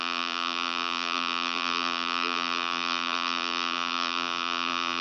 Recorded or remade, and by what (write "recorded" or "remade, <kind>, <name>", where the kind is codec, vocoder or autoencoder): remade, vocoder, BigVGAN v2